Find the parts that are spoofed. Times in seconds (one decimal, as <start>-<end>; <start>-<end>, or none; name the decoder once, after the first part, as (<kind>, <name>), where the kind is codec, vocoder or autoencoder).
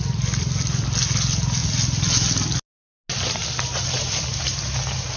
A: none